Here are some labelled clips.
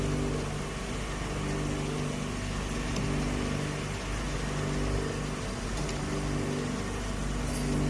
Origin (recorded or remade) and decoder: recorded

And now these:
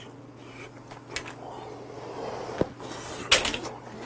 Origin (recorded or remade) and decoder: recorded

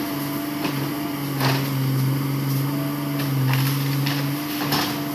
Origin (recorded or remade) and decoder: recorded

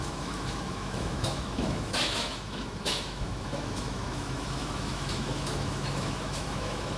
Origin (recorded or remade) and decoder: remade, autoencoder, DAC-VAE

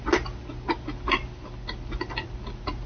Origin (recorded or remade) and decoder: recorded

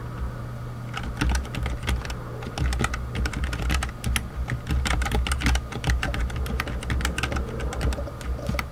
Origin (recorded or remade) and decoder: recorded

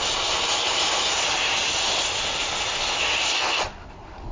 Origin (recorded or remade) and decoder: recorded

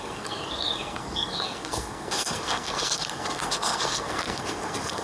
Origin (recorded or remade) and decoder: remade, codec, SNAC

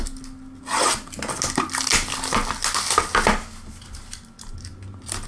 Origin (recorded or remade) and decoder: recorded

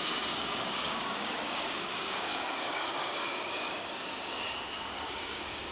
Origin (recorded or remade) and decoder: remade, codec, DAC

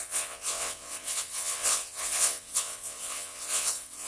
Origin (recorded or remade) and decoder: remade, vocoder, WaveNeXt